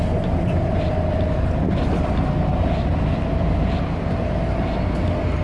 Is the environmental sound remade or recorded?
recorded